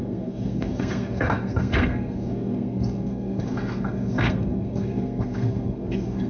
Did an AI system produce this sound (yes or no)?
yes